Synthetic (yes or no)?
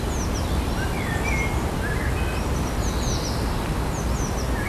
no